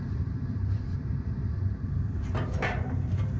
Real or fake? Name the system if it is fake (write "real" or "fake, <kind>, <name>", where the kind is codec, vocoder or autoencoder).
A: fake, vocoder, BigVGAN v2